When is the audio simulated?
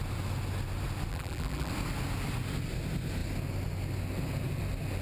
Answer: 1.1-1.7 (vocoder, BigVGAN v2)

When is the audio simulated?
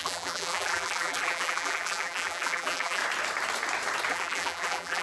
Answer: 0.0-3.0 (vocoder, BigVGAN v2); 4.1-5.0